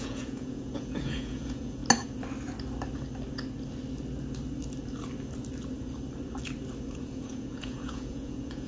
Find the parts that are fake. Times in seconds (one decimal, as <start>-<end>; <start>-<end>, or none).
0.0-1.8; 6.8-8.7